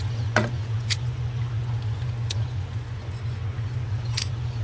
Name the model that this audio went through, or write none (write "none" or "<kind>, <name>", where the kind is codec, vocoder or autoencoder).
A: vocoder, Vocos